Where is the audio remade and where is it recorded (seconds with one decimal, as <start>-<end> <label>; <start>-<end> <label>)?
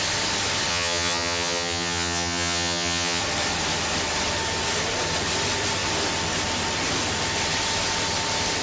0.0-0.7 recorded; 0.7-3.2 remade; 3.2-8.6 recorded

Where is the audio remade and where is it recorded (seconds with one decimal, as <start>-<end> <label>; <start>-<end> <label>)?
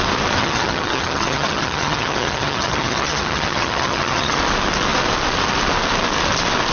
0.0-0.4 recorded; 0.4-4.4 remade; 4.4-6.7 recorded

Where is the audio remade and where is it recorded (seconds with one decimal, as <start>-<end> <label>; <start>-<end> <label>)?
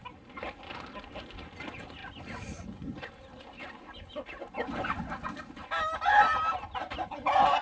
0.0-7.6 recorded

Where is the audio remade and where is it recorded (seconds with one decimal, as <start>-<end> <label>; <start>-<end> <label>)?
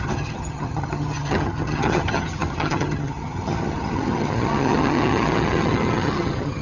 0.0-6.6 remade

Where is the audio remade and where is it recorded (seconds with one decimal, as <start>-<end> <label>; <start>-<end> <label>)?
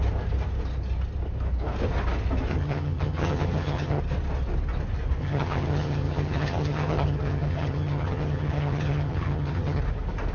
0.0-2.5 recorded; 2.5-4.0 remade; 4.0-5.2 recorded; 5.2-9.8 remade; 9.8-10.3 recorded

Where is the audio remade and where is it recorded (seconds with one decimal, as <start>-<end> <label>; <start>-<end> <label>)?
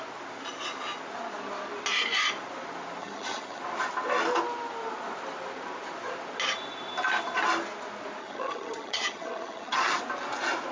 0.0-3.0 recorded; 3.0-3.6 remade; 3.6-8.2 recorded; 8.2-10.0 remade; 10.0-10.7 recorded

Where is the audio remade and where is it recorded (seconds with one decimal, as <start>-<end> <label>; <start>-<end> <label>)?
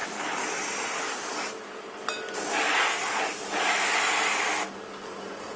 0.0-5.6 recorded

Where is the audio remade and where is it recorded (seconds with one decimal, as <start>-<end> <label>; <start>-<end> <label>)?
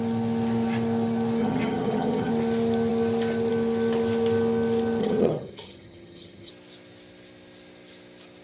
0.0-1.4 recorded; 1.4-2.3 remade; 2.3-5.0 recorded; 5.0-6.5 remade; 6.5-8.4 recorded